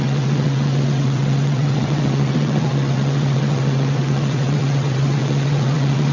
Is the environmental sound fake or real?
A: fake